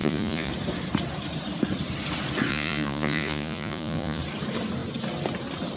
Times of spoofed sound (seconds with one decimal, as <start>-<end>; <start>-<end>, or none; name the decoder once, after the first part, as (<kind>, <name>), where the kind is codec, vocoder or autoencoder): 0.0-0.5 (vocoder, Vocos); 2.5-4.2